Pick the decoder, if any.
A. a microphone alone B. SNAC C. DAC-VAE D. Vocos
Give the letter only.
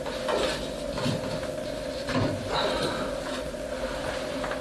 A